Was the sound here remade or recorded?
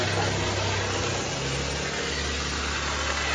recorded